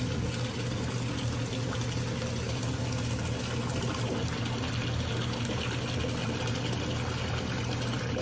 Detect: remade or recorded recorded